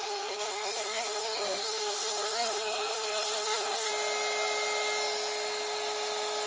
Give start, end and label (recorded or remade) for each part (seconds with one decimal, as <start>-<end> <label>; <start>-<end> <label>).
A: 0.0-3.9 remade; 3.9-6.5 recorded